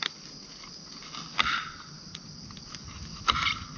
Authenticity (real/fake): real